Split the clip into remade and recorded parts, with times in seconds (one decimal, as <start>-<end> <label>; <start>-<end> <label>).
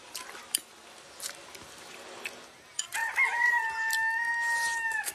0.0-5.1 recorded